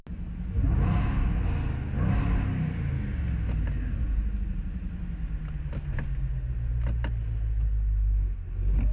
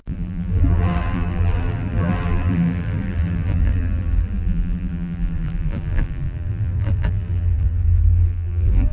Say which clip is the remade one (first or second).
second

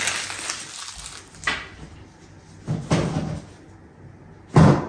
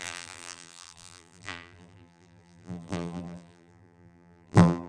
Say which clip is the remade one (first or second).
second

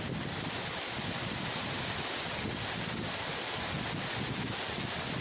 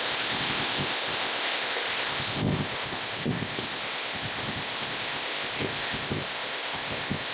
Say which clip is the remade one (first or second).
second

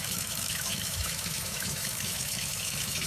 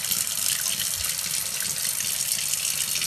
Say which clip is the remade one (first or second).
first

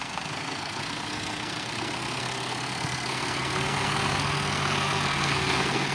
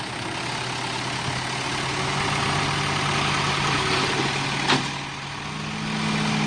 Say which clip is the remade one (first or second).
first